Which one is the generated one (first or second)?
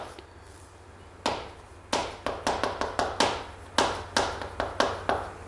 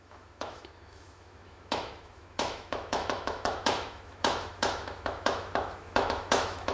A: second